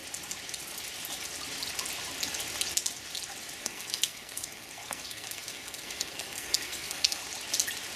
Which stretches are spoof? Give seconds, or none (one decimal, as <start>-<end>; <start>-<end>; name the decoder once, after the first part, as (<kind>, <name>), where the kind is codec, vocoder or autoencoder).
3.6-7.2 (codec, SNAC)